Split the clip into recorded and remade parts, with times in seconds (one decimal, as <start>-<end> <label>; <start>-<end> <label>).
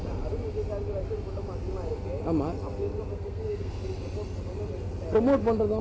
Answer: 0.0-3.1 recorded; 3.1-3.7 remade; 3.7-5.8 recorded